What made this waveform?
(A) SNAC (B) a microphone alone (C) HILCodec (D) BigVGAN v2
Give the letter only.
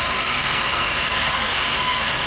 A